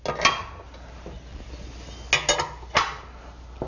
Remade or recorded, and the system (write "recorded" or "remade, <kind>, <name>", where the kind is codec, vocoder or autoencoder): recorded